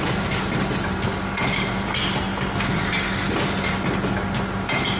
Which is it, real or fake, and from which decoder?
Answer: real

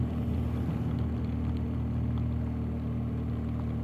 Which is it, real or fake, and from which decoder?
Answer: real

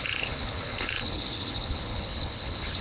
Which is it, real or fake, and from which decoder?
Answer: fake, codec, HILCodec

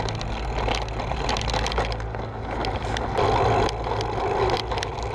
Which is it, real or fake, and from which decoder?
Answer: real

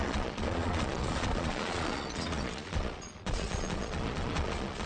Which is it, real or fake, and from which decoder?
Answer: fake, vocoder, Vocos